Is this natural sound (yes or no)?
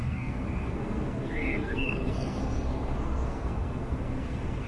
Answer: no